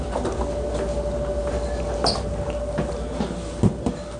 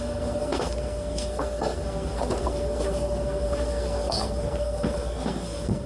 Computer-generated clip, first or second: second